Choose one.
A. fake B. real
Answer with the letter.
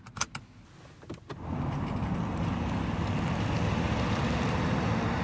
B